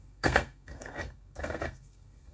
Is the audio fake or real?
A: fake